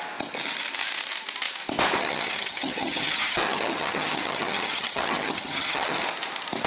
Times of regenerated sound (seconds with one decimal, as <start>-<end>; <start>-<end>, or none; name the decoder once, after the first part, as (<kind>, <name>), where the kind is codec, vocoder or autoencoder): 2.0-6.0 (vocoder, HiFi-GAN)